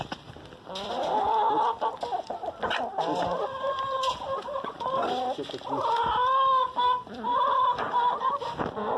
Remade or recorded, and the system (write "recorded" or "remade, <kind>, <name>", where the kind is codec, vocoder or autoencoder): recorded